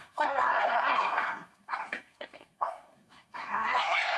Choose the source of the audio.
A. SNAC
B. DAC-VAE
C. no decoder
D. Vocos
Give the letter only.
A